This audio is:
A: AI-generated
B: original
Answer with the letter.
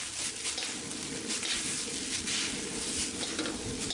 B